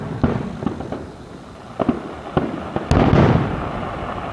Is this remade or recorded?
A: recorded